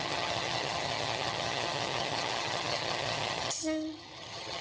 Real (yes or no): no